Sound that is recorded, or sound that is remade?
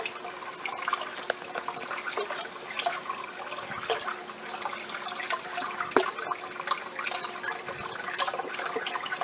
recorded